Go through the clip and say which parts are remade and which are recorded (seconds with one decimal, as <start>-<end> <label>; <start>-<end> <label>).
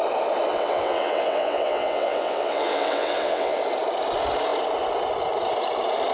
0.0-0.5 recorded; 0.5-3.6 remade; 3.6-6.1 recorded